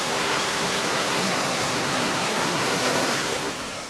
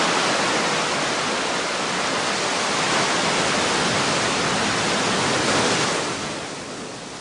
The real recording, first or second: second